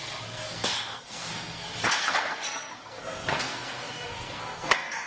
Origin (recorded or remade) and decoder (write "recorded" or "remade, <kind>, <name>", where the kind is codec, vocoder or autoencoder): remade, codec, SNAC